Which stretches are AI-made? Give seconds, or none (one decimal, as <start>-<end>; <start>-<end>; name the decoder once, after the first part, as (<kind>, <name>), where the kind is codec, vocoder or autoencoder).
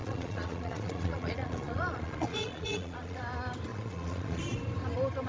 0.0-3.2 (vocoder, Vocos); 3.7-4.4